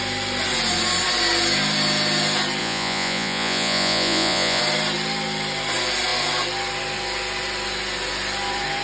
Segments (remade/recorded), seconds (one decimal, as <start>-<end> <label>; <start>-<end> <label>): 0.0-2.6 recorded; 2.6-4.6 remade; 4.6-8.8 recorded